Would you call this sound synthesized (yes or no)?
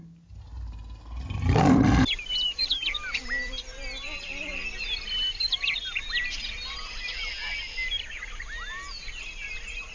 no